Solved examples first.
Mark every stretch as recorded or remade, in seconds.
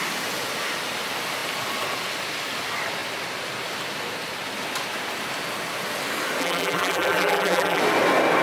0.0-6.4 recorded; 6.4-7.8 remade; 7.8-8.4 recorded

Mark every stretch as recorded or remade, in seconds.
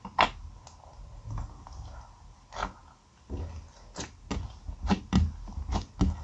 0.0-6.2 recorded